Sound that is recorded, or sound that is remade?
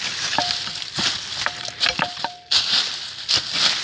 recorded